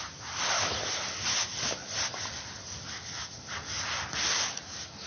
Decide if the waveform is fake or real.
real